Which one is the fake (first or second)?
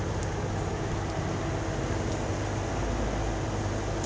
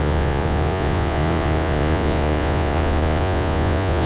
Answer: second